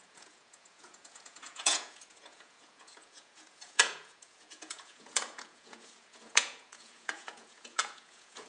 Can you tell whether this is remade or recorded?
remade